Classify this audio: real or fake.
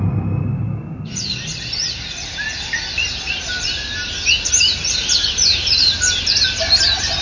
real